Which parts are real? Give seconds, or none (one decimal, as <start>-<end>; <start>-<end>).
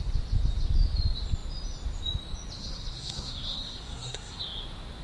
0.0-2.6; 4.4-5.0